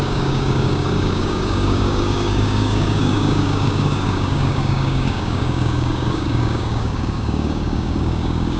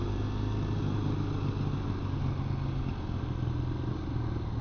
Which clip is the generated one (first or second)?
first